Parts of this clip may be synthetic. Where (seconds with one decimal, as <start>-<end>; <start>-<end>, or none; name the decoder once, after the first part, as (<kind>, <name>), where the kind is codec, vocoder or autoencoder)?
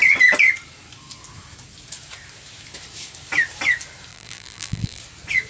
4.1-5.0 (vocoder, BigVGAN v2)